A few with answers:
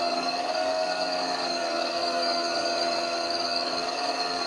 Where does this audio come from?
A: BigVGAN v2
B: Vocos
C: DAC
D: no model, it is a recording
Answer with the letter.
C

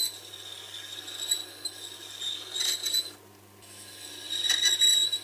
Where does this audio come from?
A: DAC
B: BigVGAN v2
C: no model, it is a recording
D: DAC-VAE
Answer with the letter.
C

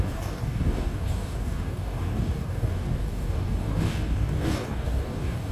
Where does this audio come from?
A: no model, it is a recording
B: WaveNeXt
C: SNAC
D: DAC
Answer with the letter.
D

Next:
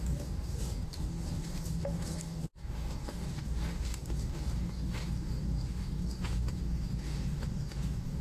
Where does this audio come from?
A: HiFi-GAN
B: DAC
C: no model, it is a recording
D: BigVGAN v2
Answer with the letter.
B